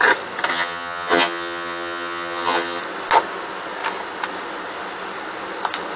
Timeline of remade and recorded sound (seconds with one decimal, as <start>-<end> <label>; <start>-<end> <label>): 0.0-0.5 recorded; 0.5-2.8 remade; 2.8-6.0 recorded